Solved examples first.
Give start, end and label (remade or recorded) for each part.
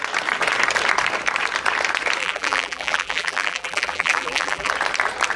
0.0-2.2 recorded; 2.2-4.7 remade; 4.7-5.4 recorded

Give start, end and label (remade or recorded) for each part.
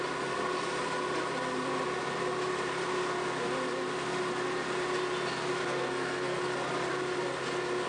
0.0-5.6 recorded; 5.6-6.4 remade; 6.4-7.9 recorded